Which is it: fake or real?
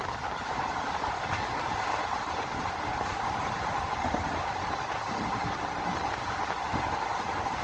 real